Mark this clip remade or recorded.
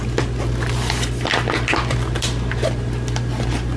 recorded